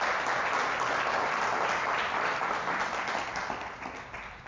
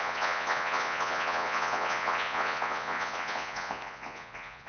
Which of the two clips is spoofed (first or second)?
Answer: second